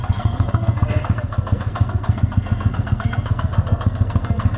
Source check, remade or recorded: remade